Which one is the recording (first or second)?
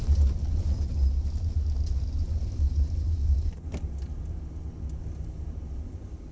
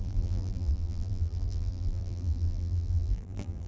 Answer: first